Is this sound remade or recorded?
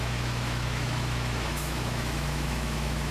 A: remade